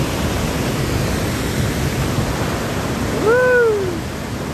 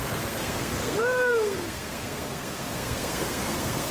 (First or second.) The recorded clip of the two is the first